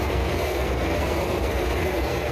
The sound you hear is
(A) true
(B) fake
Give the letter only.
B